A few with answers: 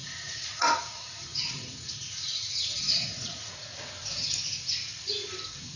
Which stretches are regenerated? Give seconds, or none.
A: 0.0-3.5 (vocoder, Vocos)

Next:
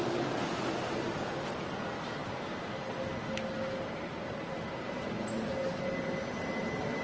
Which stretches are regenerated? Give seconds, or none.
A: none

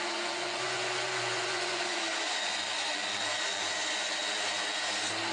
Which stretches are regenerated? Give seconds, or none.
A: 0.0-4.2 (vocoder, Vocos)

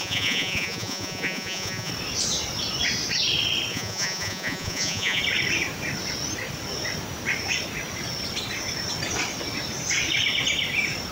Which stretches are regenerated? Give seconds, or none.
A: 0.0-1.9 (vocoder, Vocos); 3.7-5.2